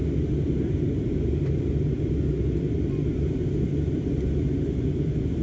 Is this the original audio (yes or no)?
yes